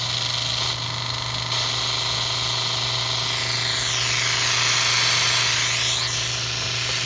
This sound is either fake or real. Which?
real